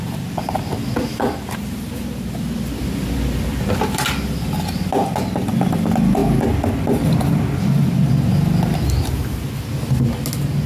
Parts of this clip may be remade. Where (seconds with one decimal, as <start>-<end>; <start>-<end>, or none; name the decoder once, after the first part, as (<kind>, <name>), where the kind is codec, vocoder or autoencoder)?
1.1-2.0 (vocoder, BigVGAN v2)